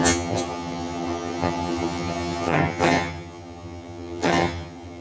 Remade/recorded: remade